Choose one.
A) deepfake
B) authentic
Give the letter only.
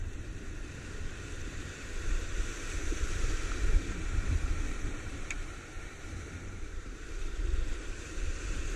A